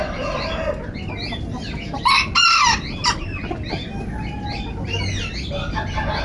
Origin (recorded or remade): recorded